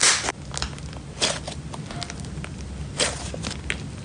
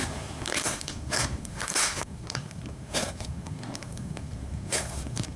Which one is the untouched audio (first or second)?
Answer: first